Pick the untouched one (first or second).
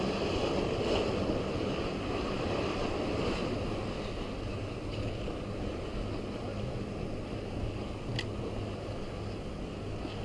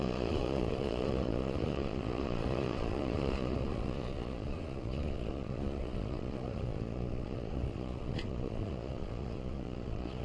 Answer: first